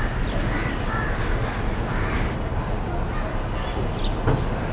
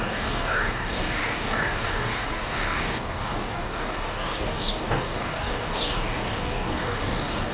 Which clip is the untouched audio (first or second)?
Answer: first